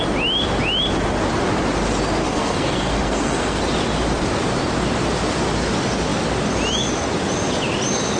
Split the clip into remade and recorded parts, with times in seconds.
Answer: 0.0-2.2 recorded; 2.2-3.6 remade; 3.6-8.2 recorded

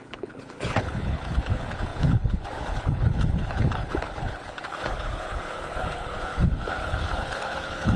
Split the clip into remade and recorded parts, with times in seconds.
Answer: 0.0-8.0 remade

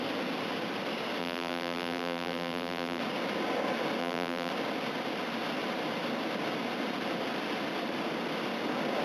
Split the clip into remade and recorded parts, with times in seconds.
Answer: 0.0-1.2 recorded; 1.2-3.0 remade; 3.0-4.0 recorded; 4.0-4.5 remade; 4.5-9.0 recorded

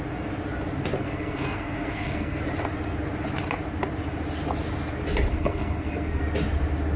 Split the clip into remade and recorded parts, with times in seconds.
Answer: 0.0-1.0 recorded; 1.0-2.4 remade; 2.4-5.3 recorded; 5.3-6.2 remade; 6.2-7.0 recorded

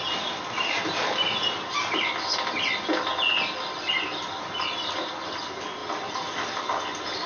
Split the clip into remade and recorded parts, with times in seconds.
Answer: 0.0-7.3 recorded

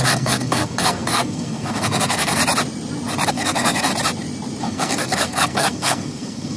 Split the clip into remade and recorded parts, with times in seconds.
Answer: 0.0-2.4 remade; 2.4-3.3 recorded; 3.3-3.9 remade; 3.9-4.6 recorded; 4.6-6.6 remade